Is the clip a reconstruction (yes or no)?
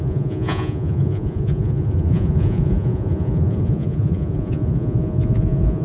yes